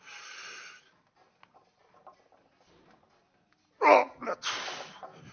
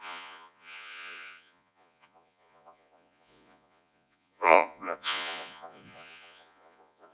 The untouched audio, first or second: first